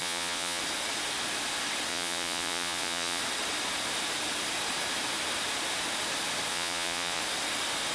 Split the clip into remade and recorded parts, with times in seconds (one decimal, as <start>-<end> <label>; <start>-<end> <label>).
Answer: 0.0-0.6 remade; 0.6-1.9 recorded; 1.9-3.2 remade; 3.2-6.5 recorded; 6.5-7.2 remade; 7.2-7.9 recorded